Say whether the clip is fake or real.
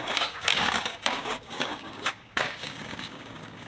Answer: fake